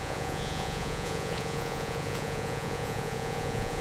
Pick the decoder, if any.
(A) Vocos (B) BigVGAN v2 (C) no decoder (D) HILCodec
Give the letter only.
A